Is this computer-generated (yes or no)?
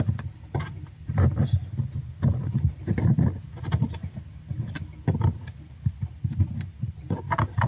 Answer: no